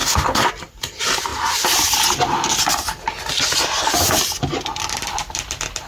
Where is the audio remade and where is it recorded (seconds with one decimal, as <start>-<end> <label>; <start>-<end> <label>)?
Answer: 0.0-0.5 remade; 0.5-5.9 recorded